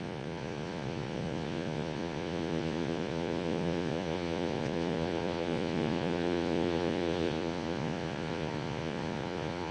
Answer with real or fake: fake